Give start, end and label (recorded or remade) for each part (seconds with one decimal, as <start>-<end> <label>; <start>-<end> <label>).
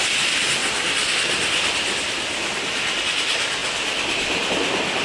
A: 0.0-5.0 recorded